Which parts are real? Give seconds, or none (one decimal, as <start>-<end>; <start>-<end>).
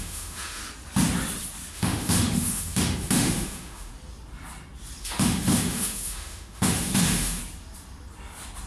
0.6-1.7; 3.9-5.0; 7.4-8.7